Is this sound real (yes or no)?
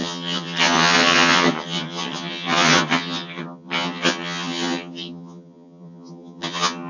no